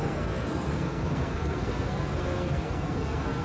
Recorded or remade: remade